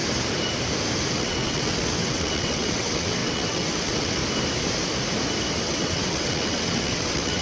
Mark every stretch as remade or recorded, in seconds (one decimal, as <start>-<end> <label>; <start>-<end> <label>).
0.0-1.1 recorded; 1.1-4.2 remade; 4.2-5.6 recorded; 5.6-7.4 remade